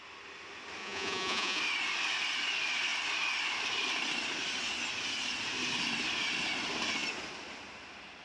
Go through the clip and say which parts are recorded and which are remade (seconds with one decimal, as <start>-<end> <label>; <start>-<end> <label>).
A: 0.0-0.8 recorded; 0.8-1.6 remade; 1.6-8.2 recorded